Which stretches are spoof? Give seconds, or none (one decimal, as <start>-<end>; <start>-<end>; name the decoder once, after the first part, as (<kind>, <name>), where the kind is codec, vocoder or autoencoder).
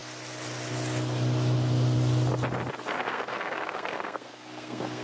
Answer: 3.0-5.0 (codec, SNAC)